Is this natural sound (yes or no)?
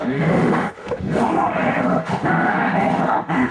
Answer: no